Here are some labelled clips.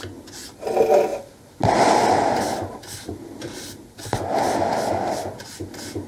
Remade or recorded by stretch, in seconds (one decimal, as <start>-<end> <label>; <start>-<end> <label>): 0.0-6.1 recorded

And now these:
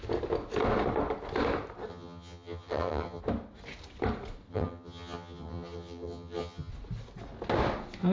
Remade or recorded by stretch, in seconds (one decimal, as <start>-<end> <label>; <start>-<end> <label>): 0.0-1.9 recorded; 1.9-3.2 remade; 3.2-4.5 recorded; 4.5-6.7 remade; 6.7-8.1 recorded

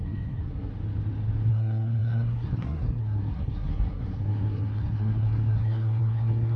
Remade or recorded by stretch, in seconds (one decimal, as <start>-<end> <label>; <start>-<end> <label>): 0.0-0.7 remade; 0.7-1.5 recorded; 1.5-6.6 remade

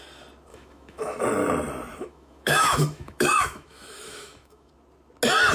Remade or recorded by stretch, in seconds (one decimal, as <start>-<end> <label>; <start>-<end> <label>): 0.0-0.5 recorded; 0.5-1.2 remade; 1.2-1.9 recorded; 1.9-4.7 remade; 4.7-5.5 recorded

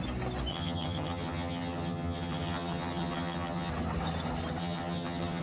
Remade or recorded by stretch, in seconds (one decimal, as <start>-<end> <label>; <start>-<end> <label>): 0.0-0.5 recorded; 0.5-3.7 remade; 3.7-4.6 recorded; 4.6-5.4 remade

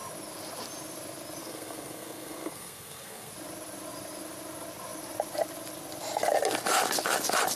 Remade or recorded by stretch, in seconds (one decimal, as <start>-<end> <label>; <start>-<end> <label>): 0.0-1.4 recorded; 1.4-3.3 remade; 3.3-7.6 recorded